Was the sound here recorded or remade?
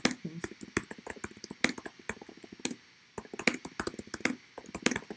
recorded